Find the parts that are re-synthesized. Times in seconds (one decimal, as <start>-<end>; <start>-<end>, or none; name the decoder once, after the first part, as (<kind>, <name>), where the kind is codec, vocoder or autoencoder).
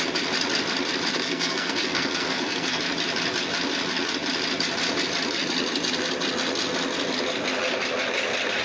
1.1-2.8 (codec, SNAC)